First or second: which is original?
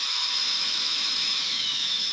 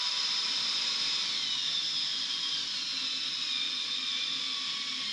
second